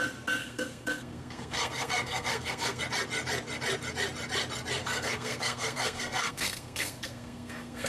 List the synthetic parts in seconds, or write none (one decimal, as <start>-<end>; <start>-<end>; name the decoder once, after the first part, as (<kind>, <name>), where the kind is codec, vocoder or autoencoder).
0.4-2.8 (codec, SNAC); 4.8-7.9